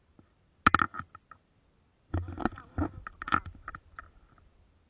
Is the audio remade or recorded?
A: recorded